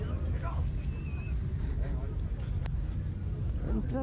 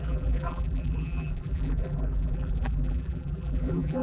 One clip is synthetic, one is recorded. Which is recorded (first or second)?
first